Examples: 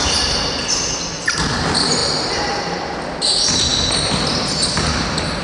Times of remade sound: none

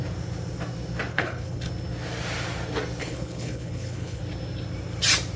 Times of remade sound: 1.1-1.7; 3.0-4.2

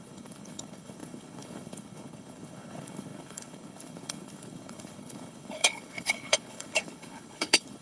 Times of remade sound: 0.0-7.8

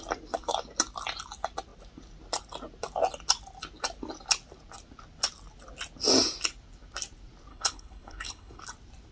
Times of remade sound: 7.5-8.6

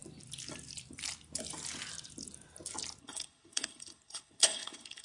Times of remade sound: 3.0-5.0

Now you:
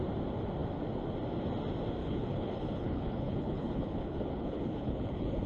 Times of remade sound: 2.0-5.5